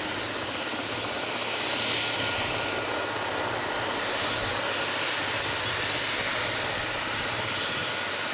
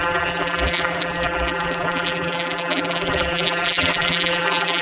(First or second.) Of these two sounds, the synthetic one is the second